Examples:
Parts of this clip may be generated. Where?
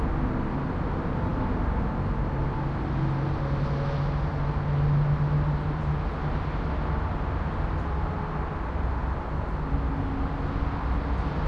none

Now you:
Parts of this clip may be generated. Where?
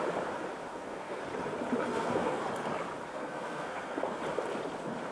0.7-1.2 (codec, SNAC); 1.9-2.4; 3.1-4.2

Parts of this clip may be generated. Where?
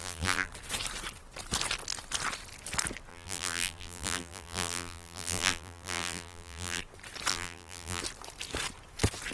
0.0-0.5 (vocoder, BigVGAN v2); 3.1-6.8; 7.3-8.0